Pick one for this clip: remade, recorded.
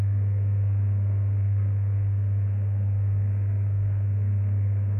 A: remade